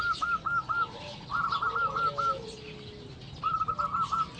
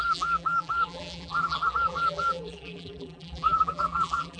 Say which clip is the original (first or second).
first